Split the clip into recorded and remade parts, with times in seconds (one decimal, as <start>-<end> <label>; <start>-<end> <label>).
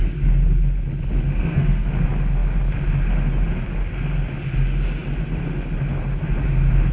0.0-1.3 recorded; 1.3-1.9 remade; 1.9-6.9 recorded